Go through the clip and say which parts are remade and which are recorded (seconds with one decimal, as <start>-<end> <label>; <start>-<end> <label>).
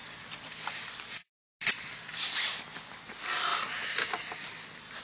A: 0.0-5.0 recorded